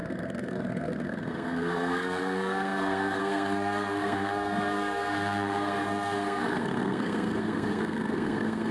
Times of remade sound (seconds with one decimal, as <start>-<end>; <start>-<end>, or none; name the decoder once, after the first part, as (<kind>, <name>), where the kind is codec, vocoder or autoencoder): 0.0-8.7 (codec, SNAC)